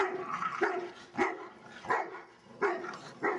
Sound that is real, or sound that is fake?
real